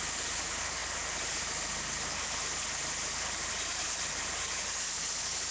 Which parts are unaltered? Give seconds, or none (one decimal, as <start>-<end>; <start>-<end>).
0.0-5.5